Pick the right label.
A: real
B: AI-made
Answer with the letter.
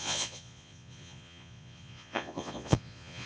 B